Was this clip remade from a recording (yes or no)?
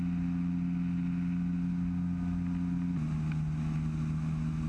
no